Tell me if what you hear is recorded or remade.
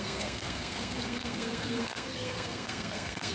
remade